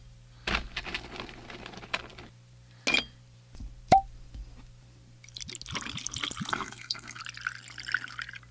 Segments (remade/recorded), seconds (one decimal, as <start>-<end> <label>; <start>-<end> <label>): 0.0-6.5 recorded; 6.5-7.2 remade; 7.2-8.5 recorded